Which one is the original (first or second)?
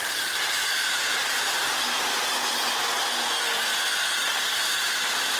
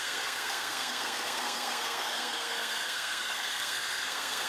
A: first